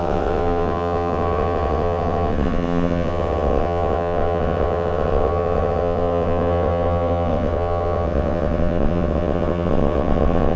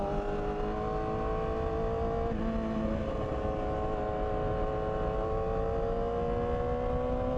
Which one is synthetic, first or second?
first